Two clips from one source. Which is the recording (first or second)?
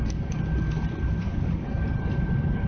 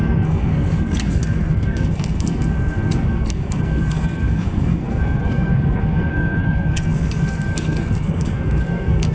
first